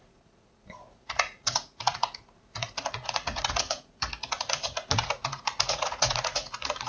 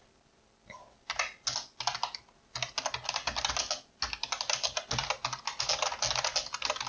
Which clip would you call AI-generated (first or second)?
first